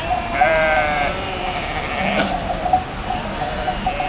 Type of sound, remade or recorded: remade